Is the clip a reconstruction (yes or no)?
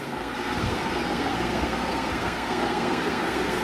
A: yes